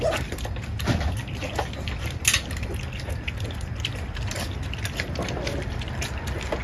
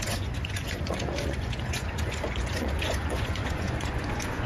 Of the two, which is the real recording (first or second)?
first